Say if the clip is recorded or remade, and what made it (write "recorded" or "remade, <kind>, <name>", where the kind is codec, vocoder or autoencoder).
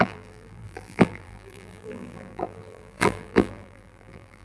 remade, vocoder, BigVGAN v2